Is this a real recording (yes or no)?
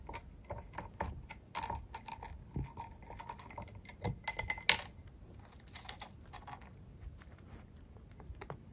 yes